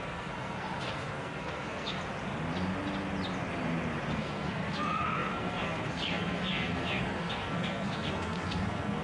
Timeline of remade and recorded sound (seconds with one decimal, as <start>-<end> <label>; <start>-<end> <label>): 0.0-2.0 remade; 2.0-4.1 recorded; 4.1-9.0 remade

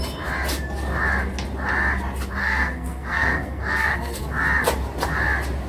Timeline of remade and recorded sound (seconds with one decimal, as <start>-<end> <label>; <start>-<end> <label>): 0.0-2.4 recorded; 2.4-4.2 remade; 4.2-5.7 recorded

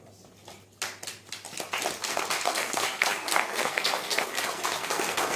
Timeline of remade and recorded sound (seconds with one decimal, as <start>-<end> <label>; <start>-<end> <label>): 0.0-2.0 recorded; 2.0-5.4 remade

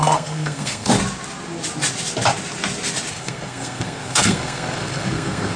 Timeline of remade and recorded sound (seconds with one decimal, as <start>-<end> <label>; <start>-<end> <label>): 0.0-0.9 remade; 0.9-3.1 recorded; 3.1-5.6 remade

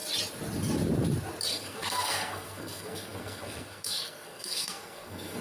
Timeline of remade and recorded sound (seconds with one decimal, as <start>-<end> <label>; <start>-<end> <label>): 0.0-1.5 recorded; 1.5-5.4 remade

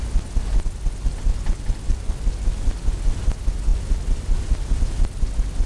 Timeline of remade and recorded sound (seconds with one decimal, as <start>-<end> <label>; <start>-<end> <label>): 0.0-5.7 recorded